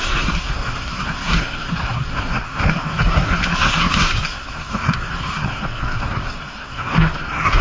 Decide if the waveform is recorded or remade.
remade